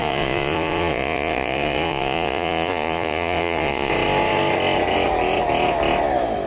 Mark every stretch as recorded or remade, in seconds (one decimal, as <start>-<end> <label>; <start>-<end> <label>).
0.0-3.9 remade; 3.9-6.5 recorded